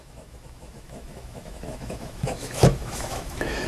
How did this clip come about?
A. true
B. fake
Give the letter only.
B